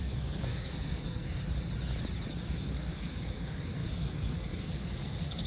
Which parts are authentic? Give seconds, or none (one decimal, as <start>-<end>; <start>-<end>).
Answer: 1.4-2.6